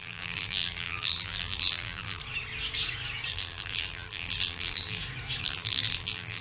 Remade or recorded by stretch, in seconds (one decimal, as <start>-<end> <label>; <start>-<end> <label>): 0.0-2.2 remade; 2.2-3.3 recorded; 3.3-5.0 remade; 5.0-5.4 recorded; 5.4-6.4 remade